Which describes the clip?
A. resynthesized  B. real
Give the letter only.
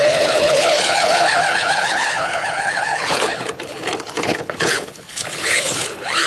A